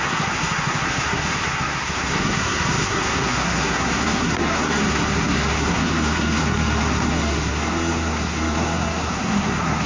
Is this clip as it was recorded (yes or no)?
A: no